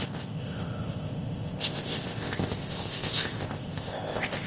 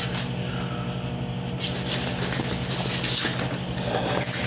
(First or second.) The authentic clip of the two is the second